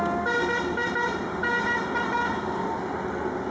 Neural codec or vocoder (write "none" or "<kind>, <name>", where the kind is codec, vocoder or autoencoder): none